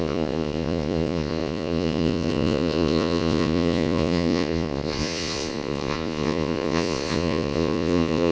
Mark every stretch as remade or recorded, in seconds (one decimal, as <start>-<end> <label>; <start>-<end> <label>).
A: 0.0-8.3 remade